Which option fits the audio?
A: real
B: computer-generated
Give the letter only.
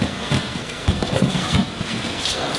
B